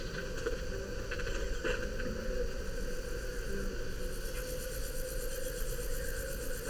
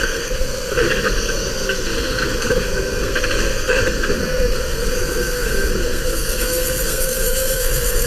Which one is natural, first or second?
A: first